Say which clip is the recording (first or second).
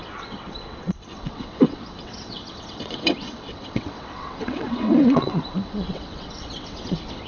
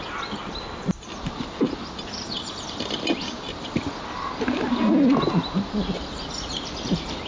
second